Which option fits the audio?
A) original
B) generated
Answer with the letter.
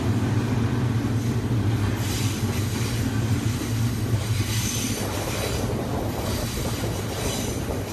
A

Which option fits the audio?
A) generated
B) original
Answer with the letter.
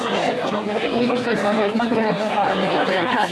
A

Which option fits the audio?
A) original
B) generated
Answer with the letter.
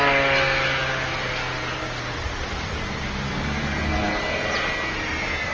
A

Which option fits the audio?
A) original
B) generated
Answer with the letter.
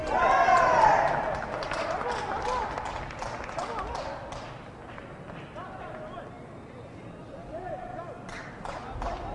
A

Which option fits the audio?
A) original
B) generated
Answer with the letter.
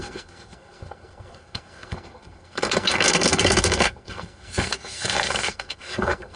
B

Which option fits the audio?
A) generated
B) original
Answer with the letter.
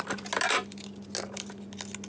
B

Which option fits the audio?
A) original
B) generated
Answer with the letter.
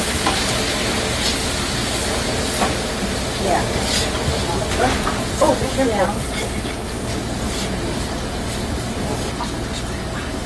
A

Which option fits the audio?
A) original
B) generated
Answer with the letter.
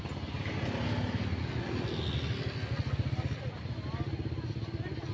A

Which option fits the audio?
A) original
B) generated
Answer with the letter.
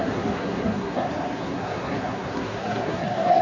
B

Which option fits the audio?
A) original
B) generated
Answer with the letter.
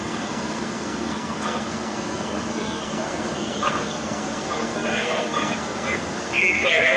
B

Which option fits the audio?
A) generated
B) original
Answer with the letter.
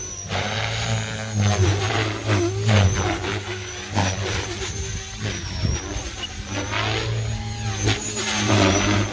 B